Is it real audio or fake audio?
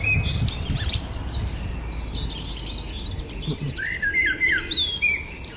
real